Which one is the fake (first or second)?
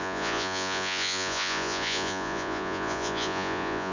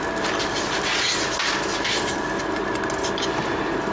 first